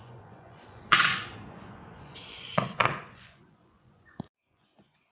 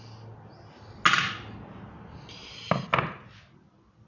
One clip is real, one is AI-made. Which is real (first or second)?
second